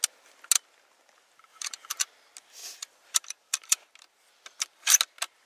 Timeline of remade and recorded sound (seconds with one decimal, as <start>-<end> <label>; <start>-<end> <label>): 0.0-1.5 recorded; 1.5-2.0 remade; 2.0-2.6 recorded; 2.6-3.9 remade; 3.9-5.5 recorded